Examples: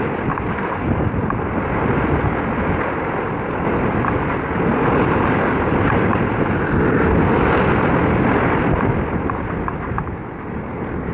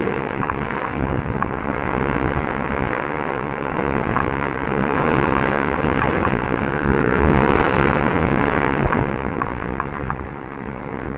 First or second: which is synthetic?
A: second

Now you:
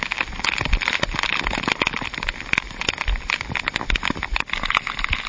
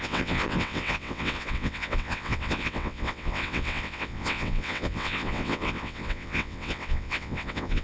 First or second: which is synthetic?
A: second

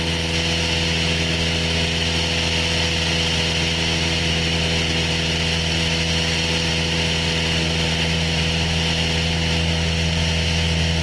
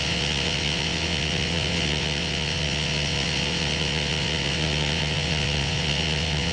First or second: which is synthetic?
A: second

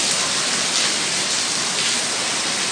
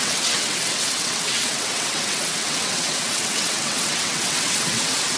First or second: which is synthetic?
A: second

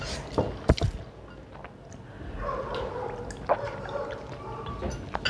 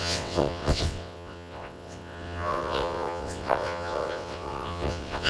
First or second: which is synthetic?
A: second